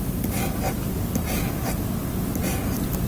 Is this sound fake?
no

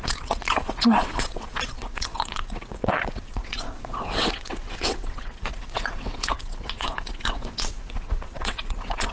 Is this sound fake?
yes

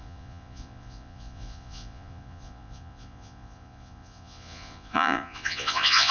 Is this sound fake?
yes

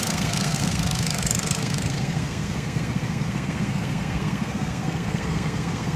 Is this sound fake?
yes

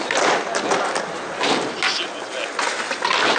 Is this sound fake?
no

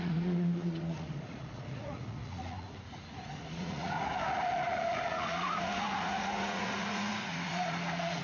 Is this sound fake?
yes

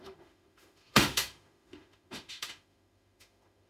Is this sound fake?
yes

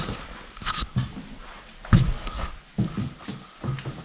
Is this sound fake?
no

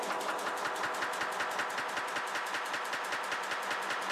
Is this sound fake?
no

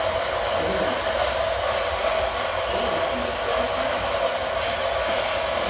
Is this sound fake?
no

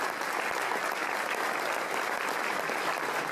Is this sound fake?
no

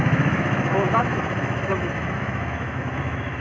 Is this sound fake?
yes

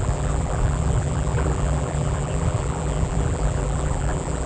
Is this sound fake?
yes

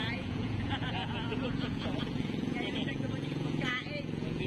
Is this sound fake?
yes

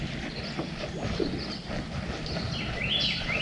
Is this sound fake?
no